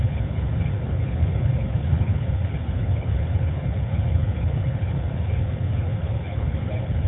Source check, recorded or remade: remade